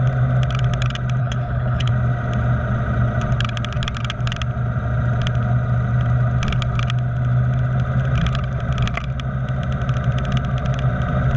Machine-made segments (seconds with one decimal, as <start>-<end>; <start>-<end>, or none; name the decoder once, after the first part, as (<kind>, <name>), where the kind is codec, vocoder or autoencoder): 1.2-1.9 (codec, HILCodec)